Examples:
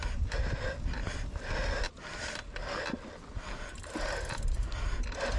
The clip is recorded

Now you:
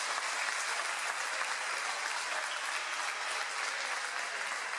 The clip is recorded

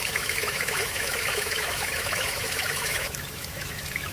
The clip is remade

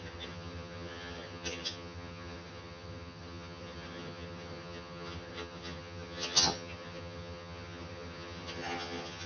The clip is remade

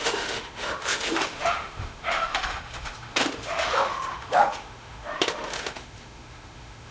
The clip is remade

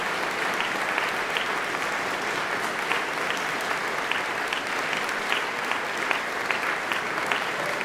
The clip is recorded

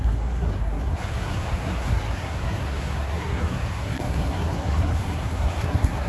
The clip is remade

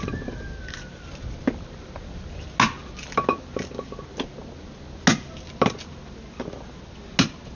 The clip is recorded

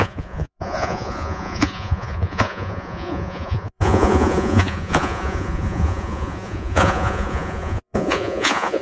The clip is remade